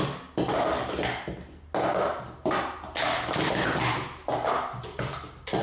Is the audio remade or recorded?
recorded